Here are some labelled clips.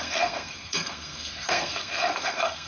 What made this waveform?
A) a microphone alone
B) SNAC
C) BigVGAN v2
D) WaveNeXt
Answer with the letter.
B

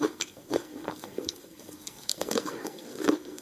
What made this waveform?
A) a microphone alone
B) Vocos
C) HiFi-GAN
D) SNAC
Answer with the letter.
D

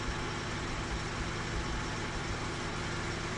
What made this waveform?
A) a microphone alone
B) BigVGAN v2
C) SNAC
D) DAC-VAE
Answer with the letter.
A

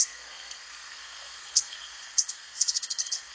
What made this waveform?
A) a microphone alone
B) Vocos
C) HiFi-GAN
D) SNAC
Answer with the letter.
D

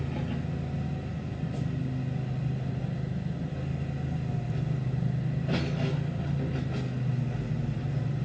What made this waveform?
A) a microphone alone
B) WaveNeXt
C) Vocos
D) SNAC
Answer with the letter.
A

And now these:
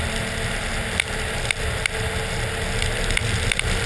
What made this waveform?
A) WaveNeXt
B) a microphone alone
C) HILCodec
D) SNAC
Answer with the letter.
B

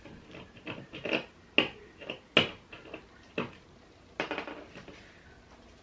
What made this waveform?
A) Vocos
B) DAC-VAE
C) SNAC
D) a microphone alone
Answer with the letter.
D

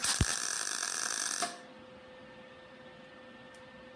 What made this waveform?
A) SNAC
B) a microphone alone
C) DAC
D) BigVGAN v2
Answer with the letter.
B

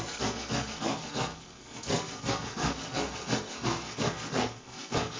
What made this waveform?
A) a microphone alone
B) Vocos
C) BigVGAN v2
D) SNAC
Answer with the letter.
D